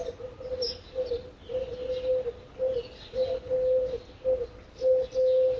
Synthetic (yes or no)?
no